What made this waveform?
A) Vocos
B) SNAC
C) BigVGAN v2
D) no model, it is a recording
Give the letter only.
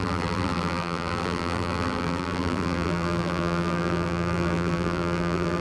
C